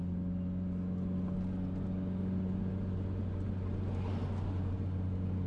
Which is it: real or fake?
real